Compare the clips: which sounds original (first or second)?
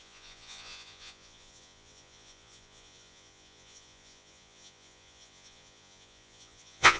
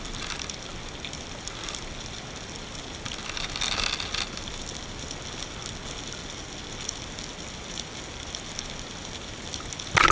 second